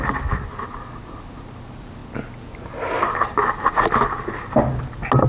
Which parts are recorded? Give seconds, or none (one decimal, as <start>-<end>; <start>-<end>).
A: 0.0-5.3